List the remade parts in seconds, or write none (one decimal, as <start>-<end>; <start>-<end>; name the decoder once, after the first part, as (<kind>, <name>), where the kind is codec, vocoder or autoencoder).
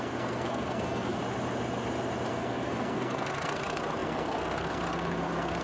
0.0-1.2 (codec, SNAC); 2.3-5.6